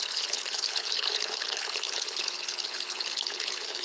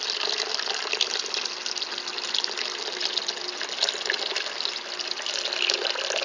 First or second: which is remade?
first